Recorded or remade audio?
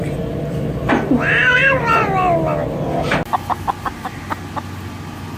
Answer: recorded